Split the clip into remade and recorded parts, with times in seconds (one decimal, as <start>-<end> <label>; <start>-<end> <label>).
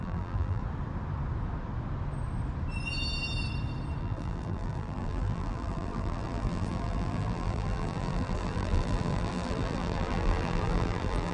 0.0-0.6 remade; 0.6-4.0 recorded; 4.0-11.3 remade